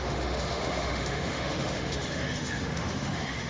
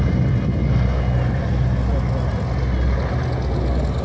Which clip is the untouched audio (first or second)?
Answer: second